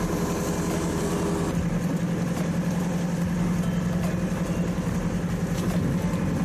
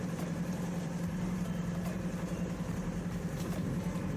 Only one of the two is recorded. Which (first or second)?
first